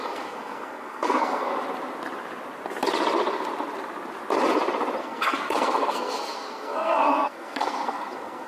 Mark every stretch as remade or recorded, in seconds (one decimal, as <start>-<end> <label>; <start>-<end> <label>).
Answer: 0.0-1.5 remade; 1.5-5.0 recorded; 5.0-8.5 remade